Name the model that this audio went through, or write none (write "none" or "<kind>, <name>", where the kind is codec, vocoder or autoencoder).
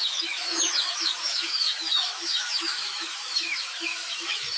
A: autoencoder, DAC-VAE